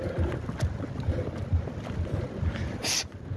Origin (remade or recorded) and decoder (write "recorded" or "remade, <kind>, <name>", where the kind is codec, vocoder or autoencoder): recorded